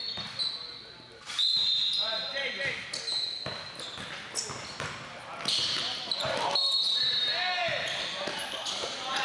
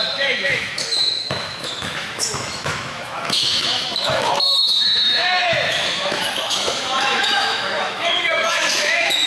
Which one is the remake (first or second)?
second